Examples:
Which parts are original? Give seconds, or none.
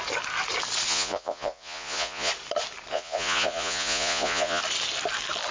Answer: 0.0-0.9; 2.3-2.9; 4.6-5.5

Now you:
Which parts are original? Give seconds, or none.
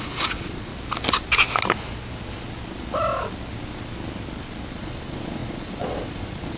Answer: 0.7-4.7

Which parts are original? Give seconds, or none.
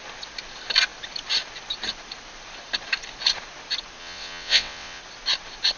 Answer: 0.0-4.0; 5.0-5.8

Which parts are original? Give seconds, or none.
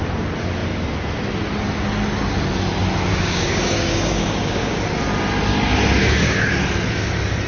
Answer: 0.0-3.1; 4.8-6.0; 6.5-7.5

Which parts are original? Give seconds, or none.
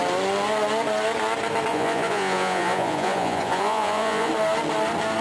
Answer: 0.0-1.7; 4.3-5.2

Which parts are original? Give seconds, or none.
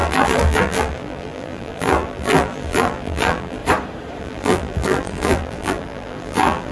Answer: 3.6-4.2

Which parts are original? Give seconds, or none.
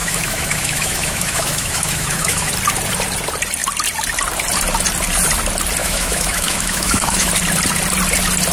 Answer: 2.5-5.8; 7.3-8.5